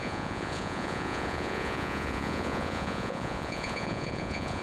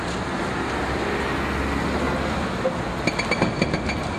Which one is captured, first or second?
second